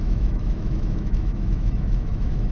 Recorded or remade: remade